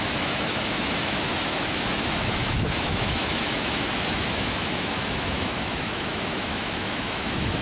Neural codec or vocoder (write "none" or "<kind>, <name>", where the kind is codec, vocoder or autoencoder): autoencoder, DAC-VAE